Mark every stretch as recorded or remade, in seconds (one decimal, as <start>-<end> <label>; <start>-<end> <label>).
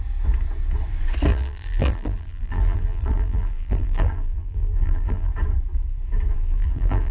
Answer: 0.0-1.3 recorded; 1.3-5.3 remade; 5.3-6.3 recorded; 6.3-7.1 remade